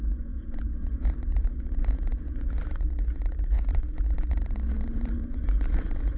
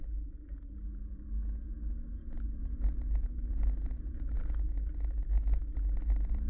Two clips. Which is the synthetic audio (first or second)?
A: first